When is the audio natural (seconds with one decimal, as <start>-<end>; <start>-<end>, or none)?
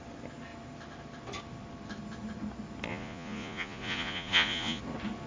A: 0.0-2.9; 4.8-5.3